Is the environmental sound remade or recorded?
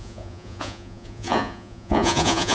remade